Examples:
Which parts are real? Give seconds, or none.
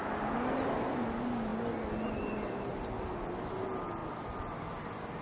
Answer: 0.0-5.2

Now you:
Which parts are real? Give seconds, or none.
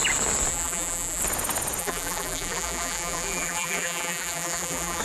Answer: 0.0-0.5; 1.2-1.8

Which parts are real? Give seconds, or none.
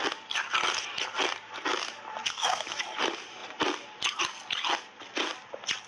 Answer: 0.0-2.2; 2.8-5.9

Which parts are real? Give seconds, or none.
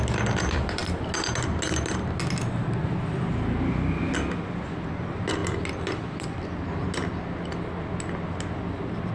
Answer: 0.0-9.1